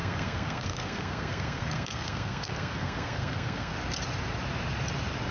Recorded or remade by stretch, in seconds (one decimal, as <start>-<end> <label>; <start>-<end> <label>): 0.0-3.7 remade; 3.7-5.3 recorded